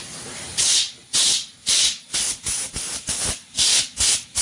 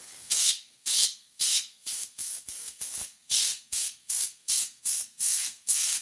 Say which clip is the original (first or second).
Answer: first